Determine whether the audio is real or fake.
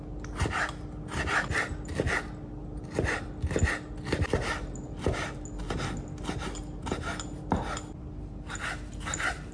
real